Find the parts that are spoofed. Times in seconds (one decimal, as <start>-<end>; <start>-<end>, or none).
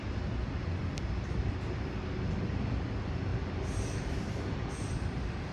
3.3-4.7